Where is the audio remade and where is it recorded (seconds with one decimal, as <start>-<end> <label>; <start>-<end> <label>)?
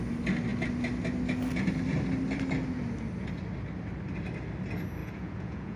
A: 0.0-5.0 recorded; 5.0-5.8 remade